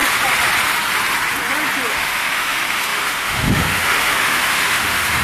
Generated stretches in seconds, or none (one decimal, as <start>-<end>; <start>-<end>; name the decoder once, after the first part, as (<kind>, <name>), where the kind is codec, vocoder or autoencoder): 1.9-5.2 (autoencoder, DAC-VAE)